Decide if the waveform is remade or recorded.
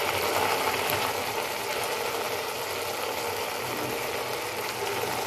recorded